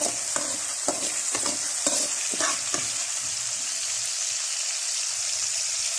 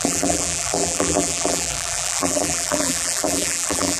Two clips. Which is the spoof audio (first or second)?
second